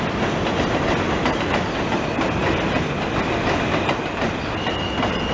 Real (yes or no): yes